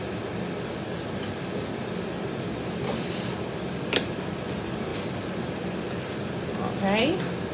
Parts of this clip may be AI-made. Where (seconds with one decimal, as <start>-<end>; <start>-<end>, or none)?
none